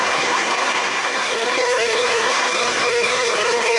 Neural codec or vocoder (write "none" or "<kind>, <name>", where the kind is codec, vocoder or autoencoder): codec, SNAC